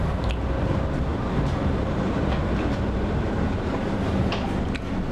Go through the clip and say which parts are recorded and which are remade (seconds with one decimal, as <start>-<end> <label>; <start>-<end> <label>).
0.0-1.1 recorded; 1.1-4.2 remade; 4.2-5.1 recorded